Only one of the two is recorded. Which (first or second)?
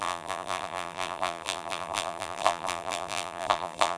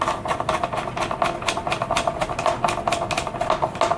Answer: second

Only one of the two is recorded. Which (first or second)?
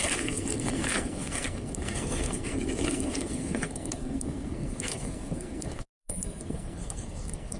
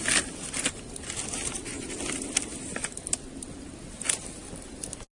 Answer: second